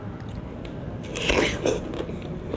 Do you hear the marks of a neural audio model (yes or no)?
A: no